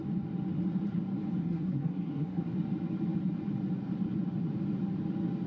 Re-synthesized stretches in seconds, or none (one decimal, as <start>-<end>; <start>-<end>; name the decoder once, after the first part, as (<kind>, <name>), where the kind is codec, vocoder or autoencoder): 1.4-2.5 (codec, SNAC)